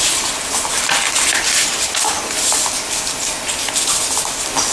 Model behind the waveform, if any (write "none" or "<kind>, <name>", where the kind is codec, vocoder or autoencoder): none